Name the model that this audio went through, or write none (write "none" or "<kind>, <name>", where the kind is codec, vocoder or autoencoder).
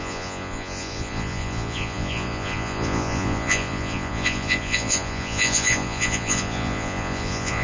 vocoder, Vocos